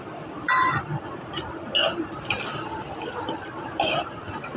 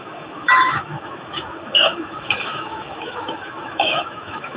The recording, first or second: first